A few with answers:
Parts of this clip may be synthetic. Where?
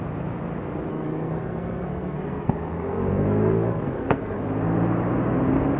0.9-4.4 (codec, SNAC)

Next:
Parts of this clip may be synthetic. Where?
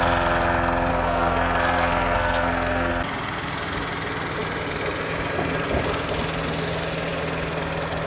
0.9-2.9 (codec, SNAC)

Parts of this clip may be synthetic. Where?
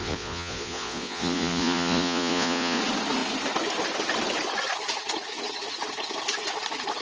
0.0-2.8 (vocoder, Vocos)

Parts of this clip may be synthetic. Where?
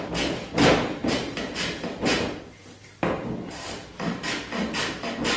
none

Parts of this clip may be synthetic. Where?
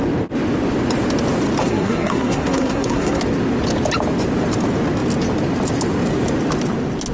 1.6-3.2 (codec, SNAC)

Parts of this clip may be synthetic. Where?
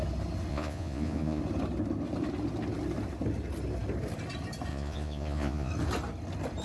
0.5-1.4 (vocoder, Vocos); 4.7-5.7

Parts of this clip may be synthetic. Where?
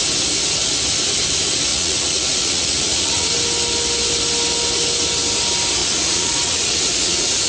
1.7-3.3 (vocoder, Vocos); 5.8-7.5